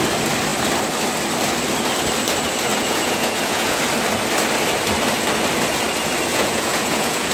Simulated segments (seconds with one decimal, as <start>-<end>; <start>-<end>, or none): 2.7-3.8; 6.3-7.3